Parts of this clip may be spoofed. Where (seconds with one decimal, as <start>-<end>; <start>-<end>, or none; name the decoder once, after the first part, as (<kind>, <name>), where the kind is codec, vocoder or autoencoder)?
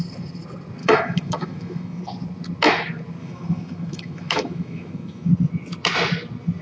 0.8-2.0 (autoencoder, DAC-VAE); 3.2-5.3